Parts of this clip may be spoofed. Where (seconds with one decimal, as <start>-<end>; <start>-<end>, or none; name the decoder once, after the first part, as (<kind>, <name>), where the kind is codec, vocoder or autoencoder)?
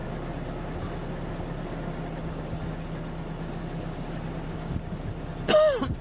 none